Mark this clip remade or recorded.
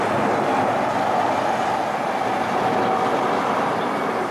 recorded